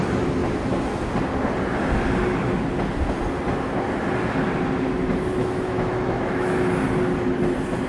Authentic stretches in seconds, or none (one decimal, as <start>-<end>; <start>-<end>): 0.0-5.4; 6.7-7.9